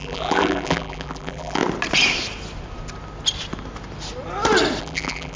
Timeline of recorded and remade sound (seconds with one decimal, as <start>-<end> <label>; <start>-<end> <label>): 0.0-1.6 remade; 1.6-4.8 recorded; 4.8-5.4 remade